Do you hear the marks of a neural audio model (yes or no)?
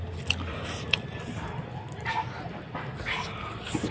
no